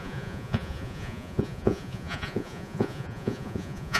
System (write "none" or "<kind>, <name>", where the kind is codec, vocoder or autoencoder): vocoder, Vocos